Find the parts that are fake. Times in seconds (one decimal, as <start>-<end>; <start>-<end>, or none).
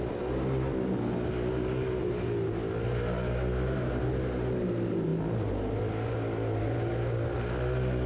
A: none